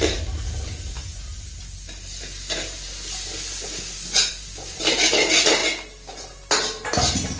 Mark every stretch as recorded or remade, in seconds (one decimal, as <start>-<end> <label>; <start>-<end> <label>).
0.0-1.0 remade; 1.0-4.3 recorded; 4.3-5.6 remade; 5.6-7.4 recorded